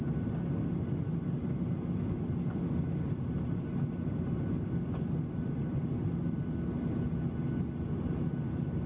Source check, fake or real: real